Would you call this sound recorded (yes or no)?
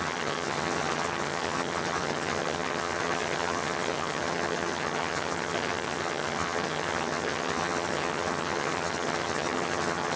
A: no